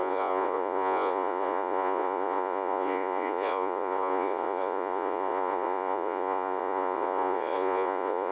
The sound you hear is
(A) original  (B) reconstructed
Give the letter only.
B